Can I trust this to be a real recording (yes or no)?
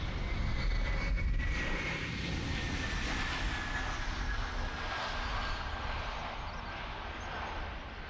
yes